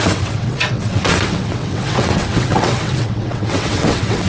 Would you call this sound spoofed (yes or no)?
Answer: yes